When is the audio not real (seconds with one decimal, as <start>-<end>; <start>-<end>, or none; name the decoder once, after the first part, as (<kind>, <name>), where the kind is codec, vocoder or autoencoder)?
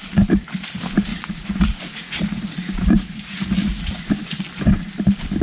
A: 1.1-4.0 (vocoder, Vocos)